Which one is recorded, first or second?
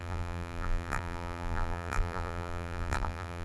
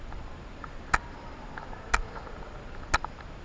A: second